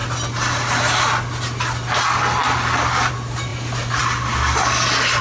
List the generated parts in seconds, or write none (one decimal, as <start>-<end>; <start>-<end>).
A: none